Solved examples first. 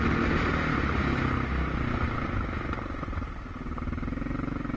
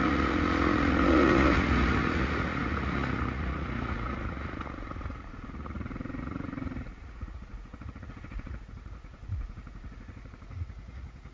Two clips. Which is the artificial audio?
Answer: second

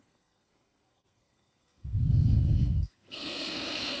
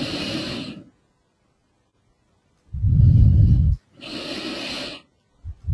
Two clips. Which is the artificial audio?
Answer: first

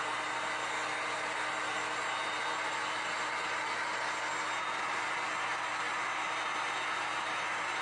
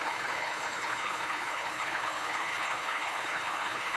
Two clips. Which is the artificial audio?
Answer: second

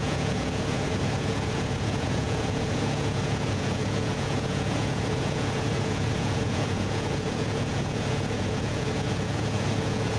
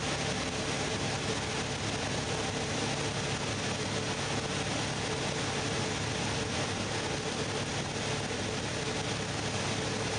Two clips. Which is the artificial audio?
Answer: first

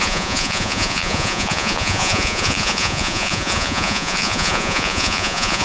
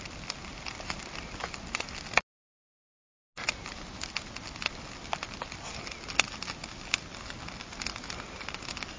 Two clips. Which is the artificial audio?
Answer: first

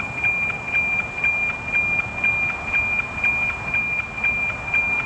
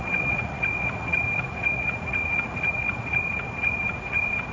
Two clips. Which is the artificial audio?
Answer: second